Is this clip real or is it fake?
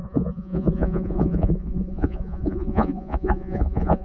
fake